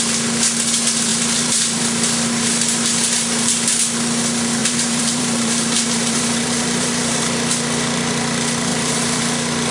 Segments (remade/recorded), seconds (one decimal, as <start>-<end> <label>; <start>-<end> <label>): 0.0-1.1 recorded; 1.1-1.8 remade; 1.8-4.6 recorded; 4.6-7.2 remade; 7.2-8.7 recorded; 8.7-9.2 remade; 9.2-9.7 recorded